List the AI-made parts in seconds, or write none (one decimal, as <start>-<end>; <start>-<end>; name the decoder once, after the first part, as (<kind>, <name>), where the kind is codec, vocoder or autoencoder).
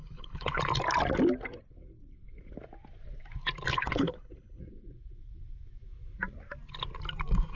0.0-0.6 (codec, HILCodec); 3.7-4.6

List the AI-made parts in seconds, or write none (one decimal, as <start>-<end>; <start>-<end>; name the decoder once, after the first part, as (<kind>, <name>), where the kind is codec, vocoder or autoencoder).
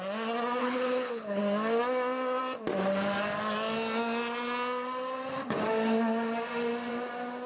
0.6-1.4 (codec, HILCodec)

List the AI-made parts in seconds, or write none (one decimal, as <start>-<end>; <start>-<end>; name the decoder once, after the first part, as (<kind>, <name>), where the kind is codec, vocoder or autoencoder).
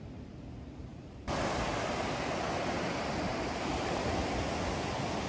none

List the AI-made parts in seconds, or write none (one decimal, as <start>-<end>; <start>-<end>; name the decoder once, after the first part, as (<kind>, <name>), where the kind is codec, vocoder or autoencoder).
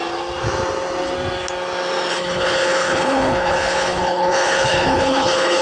2.1-5.6 (codec, HILCodec)